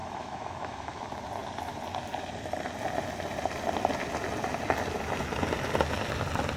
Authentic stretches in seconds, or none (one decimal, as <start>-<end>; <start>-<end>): 1.0-6.6